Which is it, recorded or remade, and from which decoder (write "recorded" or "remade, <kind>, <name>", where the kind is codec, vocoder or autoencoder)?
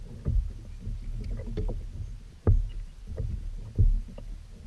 recorded